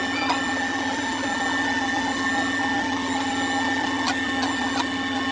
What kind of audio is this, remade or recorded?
recorded